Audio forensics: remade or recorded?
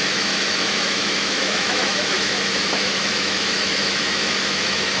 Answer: remade